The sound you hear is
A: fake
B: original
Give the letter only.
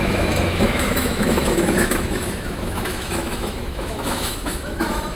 A